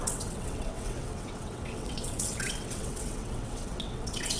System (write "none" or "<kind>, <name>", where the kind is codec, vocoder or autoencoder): vocoder, WaveNeXt